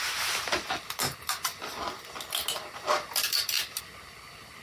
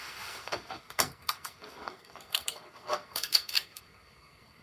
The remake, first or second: second